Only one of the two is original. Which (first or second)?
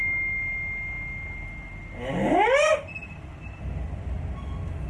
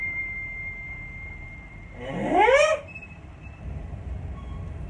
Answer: first